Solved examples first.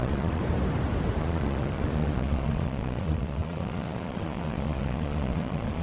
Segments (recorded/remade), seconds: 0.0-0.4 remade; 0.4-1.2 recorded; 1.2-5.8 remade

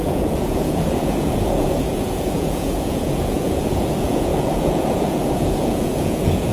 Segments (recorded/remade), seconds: 0.0-6.5 remade

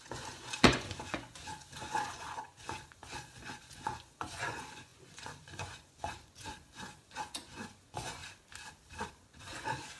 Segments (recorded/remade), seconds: 0.0-8.2 remade; 8.2-9.1 recorded; 9.1-10.0 remade

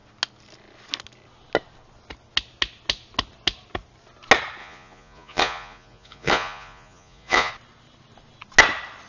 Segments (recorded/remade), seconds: 0.0-4.6 recorded; 4.6-7.5 remade; 7.5-9.1 recorded

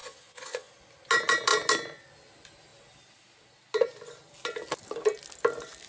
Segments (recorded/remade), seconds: 0.0-0.7 remade; 0.7-5.9 recorded

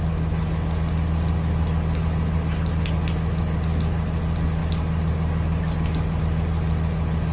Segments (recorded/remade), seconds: 0.0-7.3 recorded